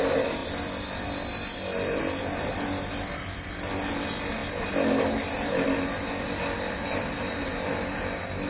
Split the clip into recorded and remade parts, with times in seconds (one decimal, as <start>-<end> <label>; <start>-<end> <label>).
0.0-8.5 recorded